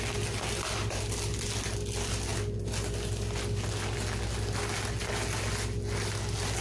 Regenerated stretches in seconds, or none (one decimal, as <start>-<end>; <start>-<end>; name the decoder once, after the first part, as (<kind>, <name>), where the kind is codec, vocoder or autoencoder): none